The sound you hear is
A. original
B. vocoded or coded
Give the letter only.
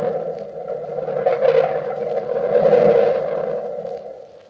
A